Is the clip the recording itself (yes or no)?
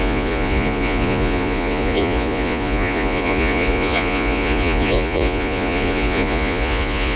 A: no